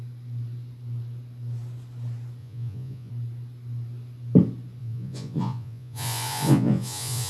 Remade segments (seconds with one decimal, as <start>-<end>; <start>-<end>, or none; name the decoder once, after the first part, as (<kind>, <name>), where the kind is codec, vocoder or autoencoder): 2.4-3.1 (vocoder, Vocos); 4.8-7.3